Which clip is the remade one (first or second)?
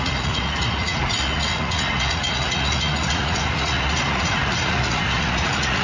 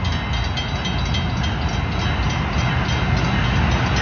first